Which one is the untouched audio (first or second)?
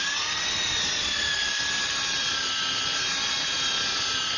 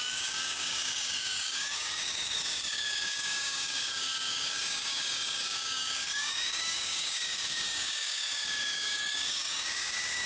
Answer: first